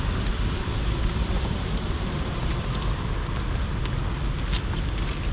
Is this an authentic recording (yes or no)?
yes